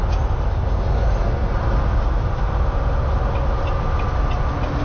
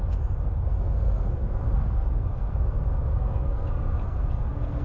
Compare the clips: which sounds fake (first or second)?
second